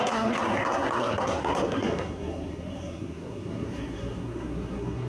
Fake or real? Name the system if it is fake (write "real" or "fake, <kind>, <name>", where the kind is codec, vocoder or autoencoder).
fake, codec, SNAC